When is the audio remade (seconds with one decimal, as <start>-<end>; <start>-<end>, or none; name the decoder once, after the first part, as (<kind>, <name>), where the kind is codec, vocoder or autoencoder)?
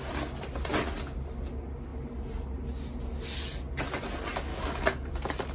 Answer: 4.5-5.1 (codec, DAC)